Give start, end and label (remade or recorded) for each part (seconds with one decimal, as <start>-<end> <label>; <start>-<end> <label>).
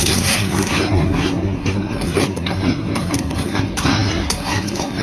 0.0-5.0 remade